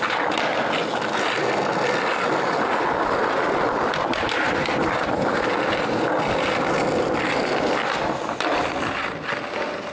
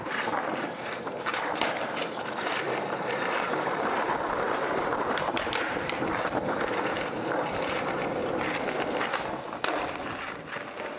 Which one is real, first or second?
first